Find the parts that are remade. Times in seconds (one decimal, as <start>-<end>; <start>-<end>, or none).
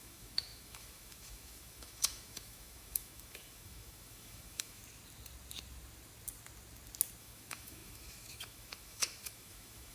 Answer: 0.0-4.8; 7.2-9.9